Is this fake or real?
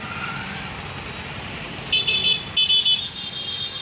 real